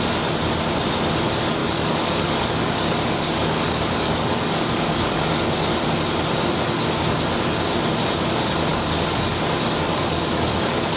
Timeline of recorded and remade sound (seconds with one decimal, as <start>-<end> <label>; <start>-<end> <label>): 0.0-1.6 recorded; 1.6-5.9 remade; 5.9-8.7 recorded; 8.7-9.4 remade; 9.4-9.9 recorded; 9.9-11.0 remade